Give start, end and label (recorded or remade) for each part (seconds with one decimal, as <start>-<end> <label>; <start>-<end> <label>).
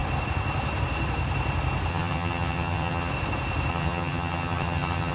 0.0-1.9 recorded; 1.9-3.1 remade; 3.1-3.7 recorded; 3.7-5.1 remade